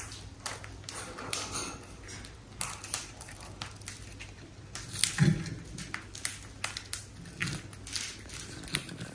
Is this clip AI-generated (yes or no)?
no